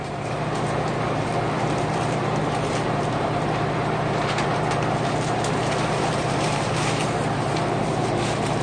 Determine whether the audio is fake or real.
fake